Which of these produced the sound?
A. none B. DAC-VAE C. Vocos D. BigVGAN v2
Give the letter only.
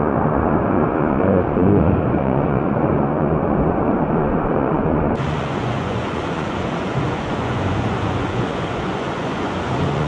C